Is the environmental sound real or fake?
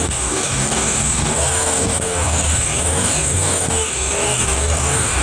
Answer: fake